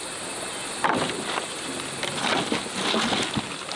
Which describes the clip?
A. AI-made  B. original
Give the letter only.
B